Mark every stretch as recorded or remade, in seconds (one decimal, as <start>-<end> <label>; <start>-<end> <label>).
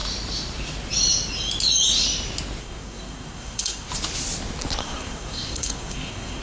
0.0-2.6 recorded; 2.6-3.9 remade; 3.9-4.8 recorded; 4.8-6.4 remade